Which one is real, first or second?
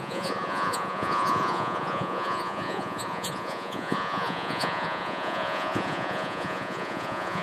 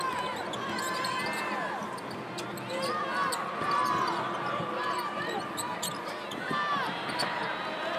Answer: second